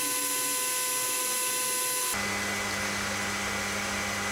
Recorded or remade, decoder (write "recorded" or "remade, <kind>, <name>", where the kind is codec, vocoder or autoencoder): recorded